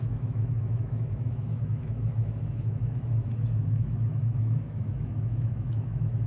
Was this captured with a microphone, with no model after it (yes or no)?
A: no